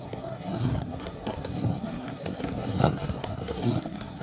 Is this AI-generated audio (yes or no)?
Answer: yes